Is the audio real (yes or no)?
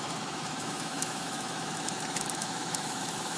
no